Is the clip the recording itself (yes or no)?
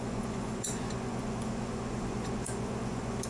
no